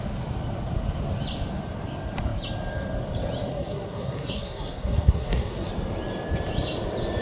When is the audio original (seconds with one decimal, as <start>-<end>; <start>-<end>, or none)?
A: 0.0-3.5; 5.7-7.2